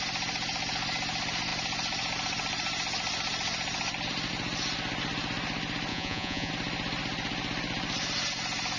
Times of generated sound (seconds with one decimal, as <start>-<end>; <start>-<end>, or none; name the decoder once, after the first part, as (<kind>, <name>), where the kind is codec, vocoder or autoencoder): 5.9-6.5 (vocoder, Vocos)